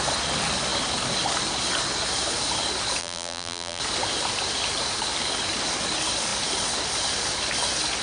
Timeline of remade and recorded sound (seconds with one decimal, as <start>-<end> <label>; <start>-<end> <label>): 0.0-3.0 recorded; 3.0-3.8 remade; 3.8-8.0 recorded

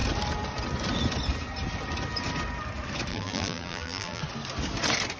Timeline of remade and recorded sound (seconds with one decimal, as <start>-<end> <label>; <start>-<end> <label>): 0.0-3.1 recorded; 3.1-4.2 remade; 4.2-5.2 recorded

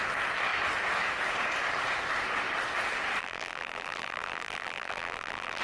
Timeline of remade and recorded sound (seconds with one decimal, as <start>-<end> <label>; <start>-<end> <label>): 0.0-3.2 recorded; 3.2-5.6 remade

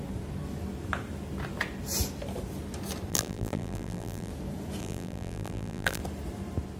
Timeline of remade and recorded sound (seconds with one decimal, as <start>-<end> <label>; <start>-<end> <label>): 0.0-3.1 recorded; 3.1-4.3 remade; 4.3-4.8 recorded; 4.8-6.0 remade; 6.0-6.8 recorded

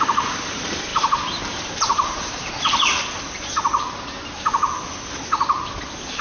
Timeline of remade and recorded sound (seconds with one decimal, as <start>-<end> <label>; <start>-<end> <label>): 0.0-0.9 recorded; 0.9-2.6 remade; 2.6-6.2 recorded

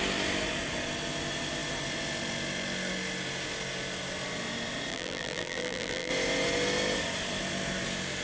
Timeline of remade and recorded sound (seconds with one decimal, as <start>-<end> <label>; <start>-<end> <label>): 0.0-4.9 recorded; 4.9-6.1 remade; 6.1-8.2 recorded

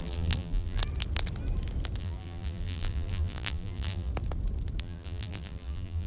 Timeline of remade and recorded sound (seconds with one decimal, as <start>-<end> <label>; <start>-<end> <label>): 0.0-0.8 remade; 0.8-2.0 recorded; 2.0-4.1 remade; 4.1-4.8 recorded; 4.8-6.1 remade